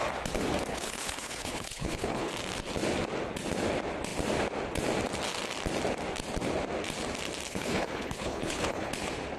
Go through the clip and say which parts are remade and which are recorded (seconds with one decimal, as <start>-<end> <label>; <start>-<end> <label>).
0.0-0.7 recorded; 0.7-2.3 remade; 2.3-7.5 recorded; 7.5-8.9 remade; 8.9-9.4 recorded